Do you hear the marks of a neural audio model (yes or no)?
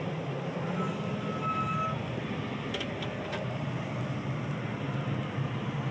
no